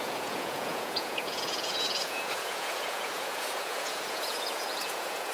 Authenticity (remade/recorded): remade